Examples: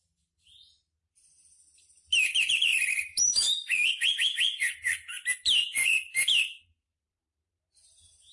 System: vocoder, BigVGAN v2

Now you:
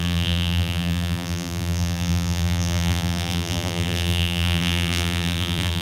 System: vocoder, BigVGAN v2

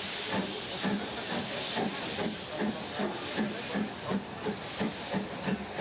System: vocoder, BigVGAN v2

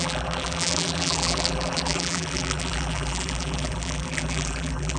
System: vocoder, BigVGAN v2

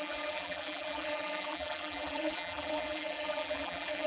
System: vocoder, BigVGAN v2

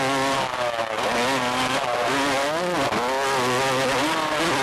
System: none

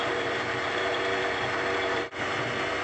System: vocoder, BigVGAN v2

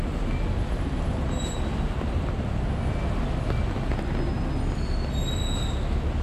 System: none